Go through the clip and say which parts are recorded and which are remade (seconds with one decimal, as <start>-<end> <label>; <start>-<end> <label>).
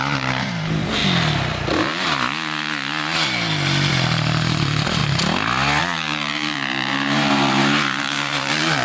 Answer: 0.0-1.0 remade; 1.0-3.9 recorded; 3.9-5.0 remade; 5.0-5.8 recorded; 5.8-8.8 remade